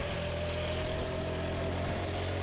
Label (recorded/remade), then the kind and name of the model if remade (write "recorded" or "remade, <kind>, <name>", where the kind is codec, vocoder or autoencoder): recorded